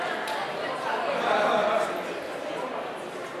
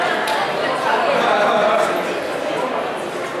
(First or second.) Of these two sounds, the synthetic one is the first